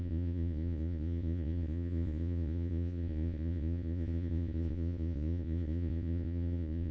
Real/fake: fake